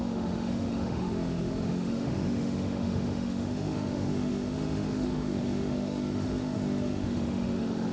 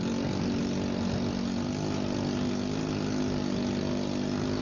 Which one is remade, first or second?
first